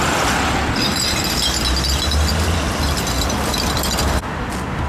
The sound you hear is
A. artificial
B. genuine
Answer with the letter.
B